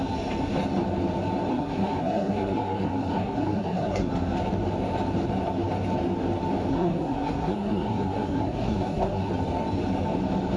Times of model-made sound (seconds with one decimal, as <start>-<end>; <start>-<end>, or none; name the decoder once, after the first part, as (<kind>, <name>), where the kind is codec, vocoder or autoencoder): 1.5-4.1 (codec, SNAC); 6.7-9.3